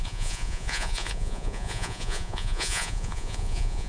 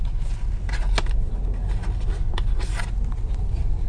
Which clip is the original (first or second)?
second